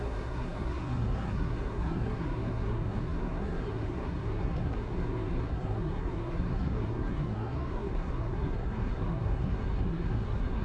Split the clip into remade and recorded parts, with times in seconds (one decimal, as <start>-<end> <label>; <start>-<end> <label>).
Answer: 0.0-10.6 remade